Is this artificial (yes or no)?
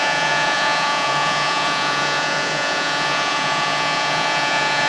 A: yes